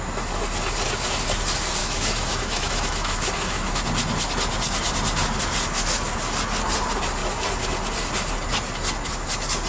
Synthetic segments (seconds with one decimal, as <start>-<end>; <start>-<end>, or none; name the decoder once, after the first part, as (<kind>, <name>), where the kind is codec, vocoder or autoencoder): 1.8-3.8 (autoencoder, DAC-VAE)